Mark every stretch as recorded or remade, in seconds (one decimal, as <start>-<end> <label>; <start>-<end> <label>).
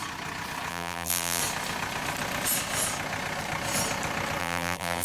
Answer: 0.0-0.7 recorded; 0.7-1.4 remade; 1.4-4.4 recorded; 4.4-5.0 remade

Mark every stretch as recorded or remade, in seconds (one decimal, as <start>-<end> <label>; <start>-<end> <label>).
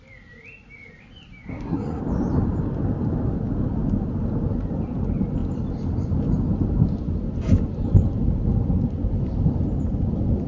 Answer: 0.0-1.5 recorded; 1.5-2.0 remade; 2.0-10.5 recorded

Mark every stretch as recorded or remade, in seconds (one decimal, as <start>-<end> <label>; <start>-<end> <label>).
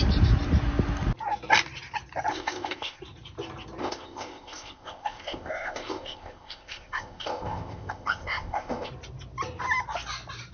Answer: 0.0-2.3 recorded; 2.3-3.0 remade; 3.0-3.8 recorded; 3.8-8.9 remade; 8.9-10.5 recorded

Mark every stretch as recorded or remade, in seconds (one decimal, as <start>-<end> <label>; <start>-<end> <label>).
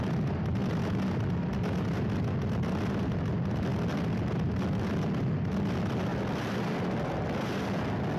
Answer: 0.0-8.2 recorded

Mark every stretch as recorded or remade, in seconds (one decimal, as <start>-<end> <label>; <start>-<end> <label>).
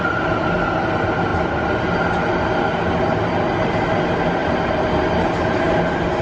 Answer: 0.0-6.2 recorded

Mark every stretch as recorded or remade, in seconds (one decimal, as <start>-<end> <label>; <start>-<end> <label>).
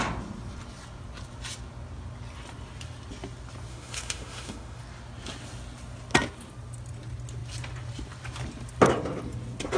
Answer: 0.0-3.7 recorded; 3.7-4.8 remade; 4.8-9.8 recorded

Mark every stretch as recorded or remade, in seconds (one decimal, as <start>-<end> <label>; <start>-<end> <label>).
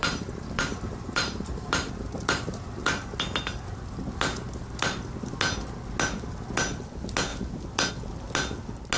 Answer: 0.0-1.9 remade; 1.9-9.0 recorded